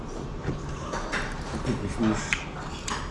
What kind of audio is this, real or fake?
fake